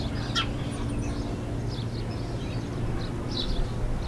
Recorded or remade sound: recorded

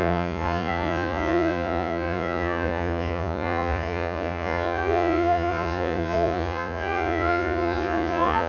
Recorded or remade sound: remade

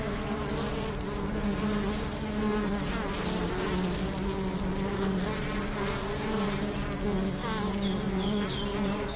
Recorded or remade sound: recorded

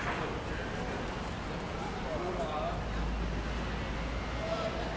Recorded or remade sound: recorded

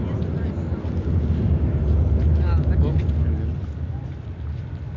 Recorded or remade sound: recorded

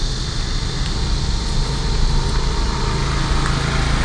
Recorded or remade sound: recorded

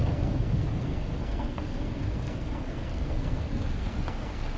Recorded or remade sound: remade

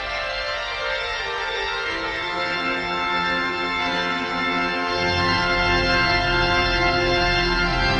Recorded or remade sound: remade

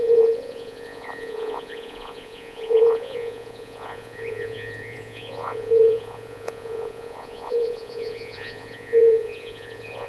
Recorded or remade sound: remade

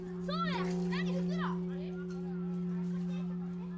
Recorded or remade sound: recorded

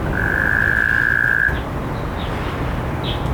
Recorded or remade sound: recorded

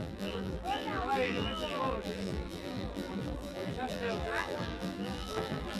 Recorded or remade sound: remade